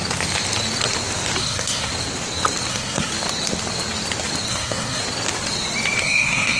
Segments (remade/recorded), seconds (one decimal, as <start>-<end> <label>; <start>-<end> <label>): 0.0-1.4 recorded; 1.4-1.9 remade; 1.9-2.7 recorded; 2.7-3.1 remade; 3.1-4.5 recorded; 4.5-5.0 remade; 5.0-6.0 recorded; 6.0-6.6 remade